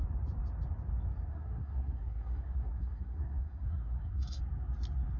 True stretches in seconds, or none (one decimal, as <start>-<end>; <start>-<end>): 0.0-1.3; 4.4-5.2